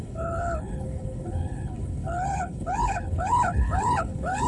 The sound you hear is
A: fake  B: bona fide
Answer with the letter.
A